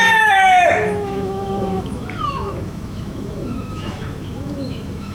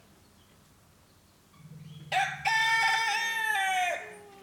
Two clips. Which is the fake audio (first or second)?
first